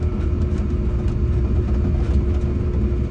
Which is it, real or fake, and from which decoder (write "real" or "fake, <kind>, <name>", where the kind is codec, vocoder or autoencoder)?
real